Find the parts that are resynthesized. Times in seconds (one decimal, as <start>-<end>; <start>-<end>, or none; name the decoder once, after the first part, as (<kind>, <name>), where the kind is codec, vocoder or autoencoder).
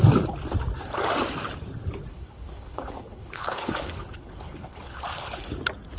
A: 2.1-5.5 (codec, HILCodec)